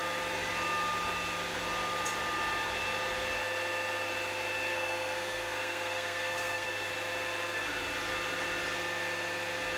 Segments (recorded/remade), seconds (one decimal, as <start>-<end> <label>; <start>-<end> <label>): 0.0-4.7 recorded; 4.7-6.9 remade; 6.9-9.8 recorded